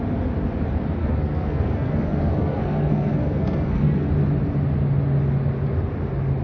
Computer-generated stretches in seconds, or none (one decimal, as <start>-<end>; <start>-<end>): 1.0-4.1